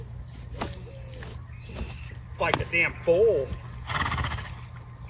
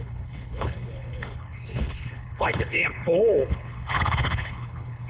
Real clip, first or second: first